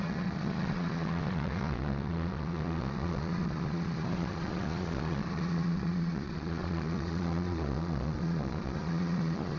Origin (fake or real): fake